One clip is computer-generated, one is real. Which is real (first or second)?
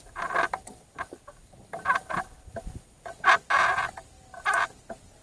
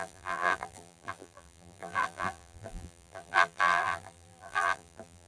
first